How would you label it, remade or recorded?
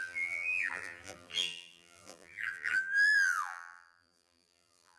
remade